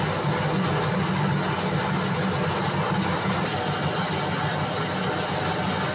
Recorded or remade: recorded